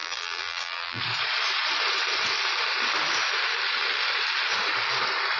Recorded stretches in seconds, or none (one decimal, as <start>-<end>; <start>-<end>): 1.0-5.4